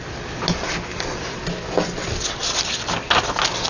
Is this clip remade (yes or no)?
no